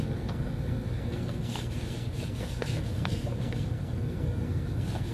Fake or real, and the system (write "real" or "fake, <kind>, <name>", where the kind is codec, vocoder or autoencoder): fake, codec, SNAC